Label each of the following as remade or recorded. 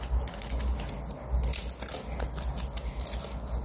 recorded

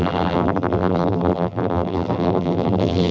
remade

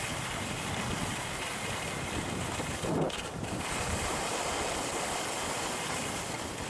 recorded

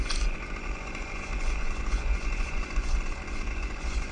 remade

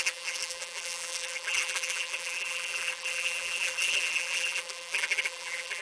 remade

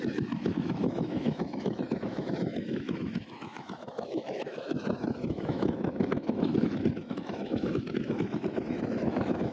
remade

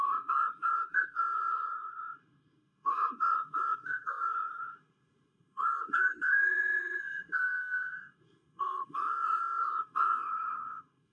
remade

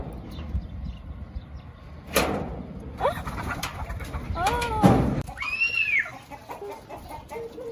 recorded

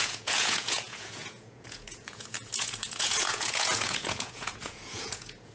remade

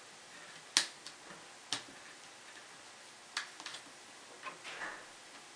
recorded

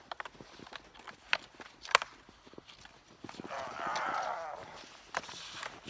recorded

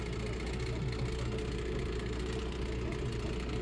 recorded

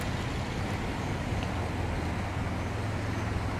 recorded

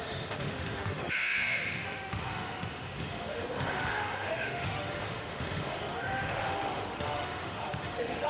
remade